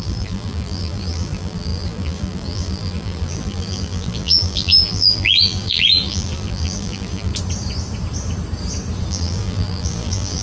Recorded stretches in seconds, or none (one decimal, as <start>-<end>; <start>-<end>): 7.3-9.1